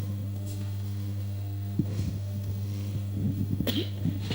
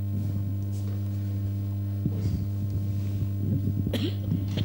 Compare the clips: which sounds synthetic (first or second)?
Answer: first